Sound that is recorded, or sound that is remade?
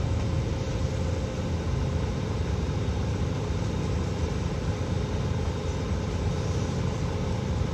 recorded